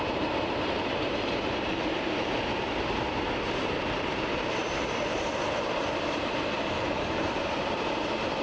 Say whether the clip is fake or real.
fake